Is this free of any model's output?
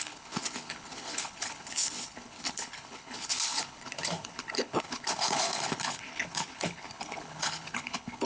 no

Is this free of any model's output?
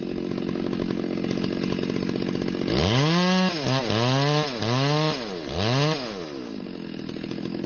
yes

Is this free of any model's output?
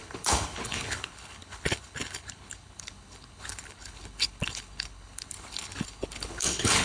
no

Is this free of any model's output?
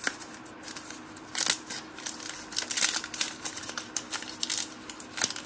yes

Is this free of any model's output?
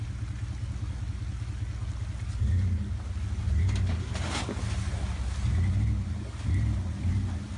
yes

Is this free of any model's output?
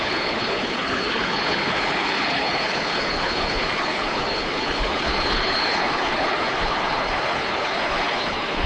no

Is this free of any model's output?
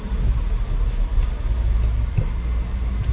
yes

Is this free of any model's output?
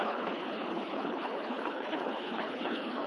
no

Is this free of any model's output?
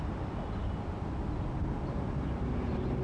yes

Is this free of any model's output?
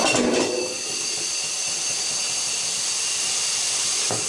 yes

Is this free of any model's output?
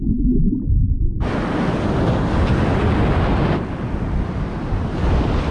yes